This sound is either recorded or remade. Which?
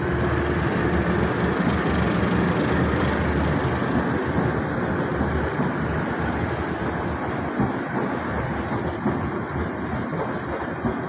recorded